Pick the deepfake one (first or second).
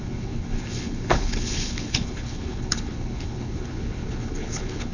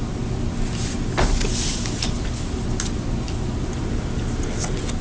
first